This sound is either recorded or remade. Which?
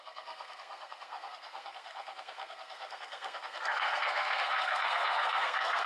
remade